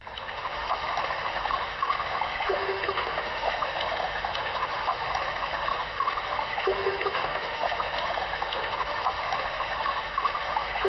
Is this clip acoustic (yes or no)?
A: no